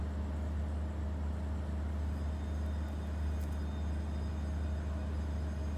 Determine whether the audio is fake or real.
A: real